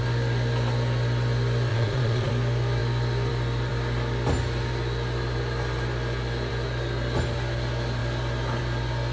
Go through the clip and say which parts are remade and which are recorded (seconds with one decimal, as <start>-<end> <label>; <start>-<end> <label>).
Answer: 0.0-1.7 recorded; 1.7-2.3 remade; 2.3-9.1 recorded